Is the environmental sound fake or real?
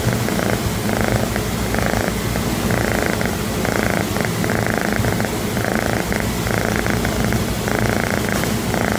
real